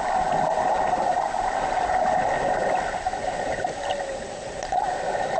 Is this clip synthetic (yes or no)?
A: no